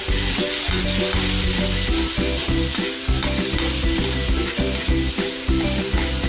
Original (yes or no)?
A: yes